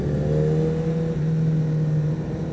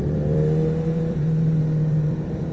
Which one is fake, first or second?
second